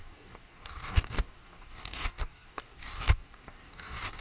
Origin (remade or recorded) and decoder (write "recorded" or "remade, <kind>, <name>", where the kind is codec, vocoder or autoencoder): remade, codec, DAC